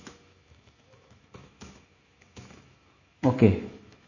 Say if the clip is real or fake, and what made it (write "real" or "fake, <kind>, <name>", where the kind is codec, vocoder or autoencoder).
fake, autoencoder, DAC-VAE